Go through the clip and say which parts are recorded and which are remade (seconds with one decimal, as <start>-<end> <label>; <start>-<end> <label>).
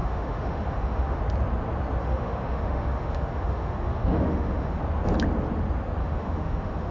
0.0-1.2 remade; 1.2-2.0 recorded; 2.0-4.8 remade; 4.8-6.0 recorded; 6.0-6.9 remade